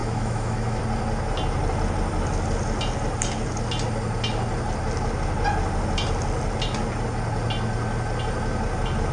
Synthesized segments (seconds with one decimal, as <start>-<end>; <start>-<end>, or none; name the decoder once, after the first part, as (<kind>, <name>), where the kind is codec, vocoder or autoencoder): 0.0-0.8 (autoencoder, DAC-VAE)